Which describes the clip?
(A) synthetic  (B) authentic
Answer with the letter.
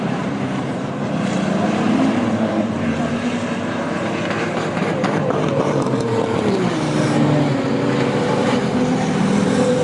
A